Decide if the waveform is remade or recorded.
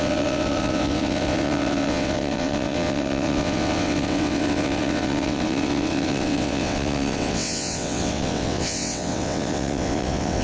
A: remade